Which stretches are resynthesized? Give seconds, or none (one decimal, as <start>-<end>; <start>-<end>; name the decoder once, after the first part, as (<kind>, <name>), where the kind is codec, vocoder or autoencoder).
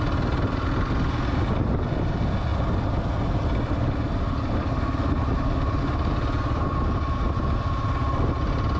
none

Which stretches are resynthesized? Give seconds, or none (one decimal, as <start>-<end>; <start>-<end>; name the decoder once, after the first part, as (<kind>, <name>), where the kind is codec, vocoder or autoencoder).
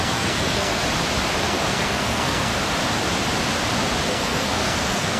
0.0-0.8 (codec, SNAC); 1.4-2.5; 4.1-5.2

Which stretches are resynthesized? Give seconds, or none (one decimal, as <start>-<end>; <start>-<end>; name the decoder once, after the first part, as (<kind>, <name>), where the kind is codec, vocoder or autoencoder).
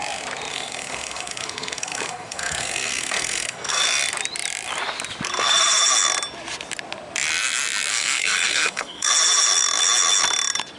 0.5-3.8 (codec, SNAC); 7.9-9.1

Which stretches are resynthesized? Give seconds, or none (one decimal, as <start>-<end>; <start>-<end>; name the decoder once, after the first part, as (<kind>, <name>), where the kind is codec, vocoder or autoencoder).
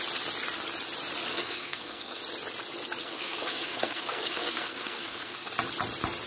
1.3-2.2 (codec, SNAC); 3.0-5.5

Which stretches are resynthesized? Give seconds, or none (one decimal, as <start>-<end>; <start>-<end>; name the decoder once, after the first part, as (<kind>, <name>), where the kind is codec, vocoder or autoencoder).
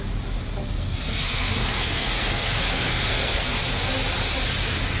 0.6-3.6 (codec, SNAC)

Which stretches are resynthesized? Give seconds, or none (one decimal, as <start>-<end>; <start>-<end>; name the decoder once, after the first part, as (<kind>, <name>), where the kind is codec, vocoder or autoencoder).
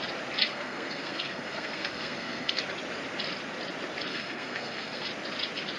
0.5-2.6 (codec, SNAC); 4.1-5.1